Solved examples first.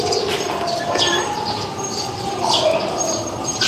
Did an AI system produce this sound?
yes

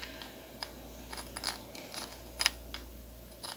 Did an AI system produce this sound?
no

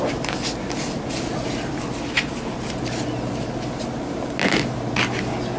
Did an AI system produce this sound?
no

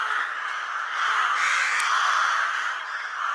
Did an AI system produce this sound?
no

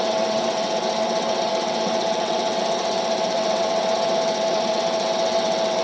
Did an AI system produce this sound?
yes